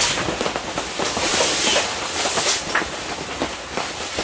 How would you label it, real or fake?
real